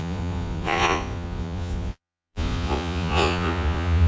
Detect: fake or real fake